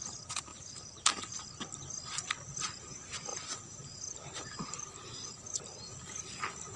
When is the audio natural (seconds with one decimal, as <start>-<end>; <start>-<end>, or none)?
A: 0.0-3.3; 5.6-6.8